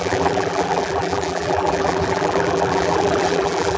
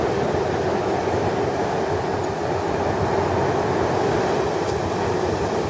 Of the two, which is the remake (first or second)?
first